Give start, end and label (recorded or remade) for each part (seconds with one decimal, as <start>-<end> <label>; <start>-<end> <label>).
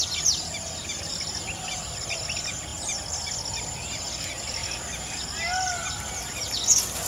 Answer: 0.0-7.1 recorded